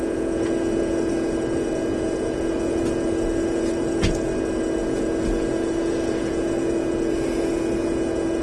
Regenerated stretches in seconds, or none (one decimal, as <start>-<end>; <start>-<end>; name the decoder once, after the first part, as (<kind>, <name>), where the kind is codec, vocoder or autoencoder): 0.0-4.3 (vocoder, Vocos); 4.8-8.4